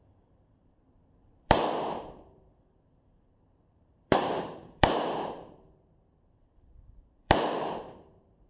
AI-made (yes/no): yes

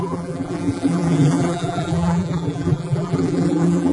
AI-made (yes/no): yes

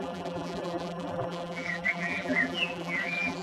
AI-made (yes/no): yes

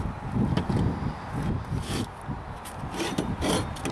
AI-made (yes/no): no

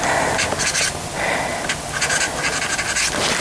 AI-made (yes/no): no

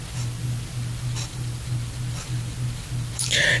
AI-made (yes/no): no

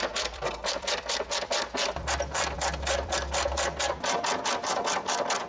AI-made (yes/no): yes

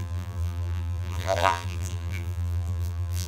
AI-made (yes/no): yes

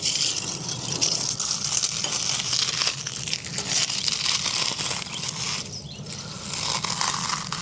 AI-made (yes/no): no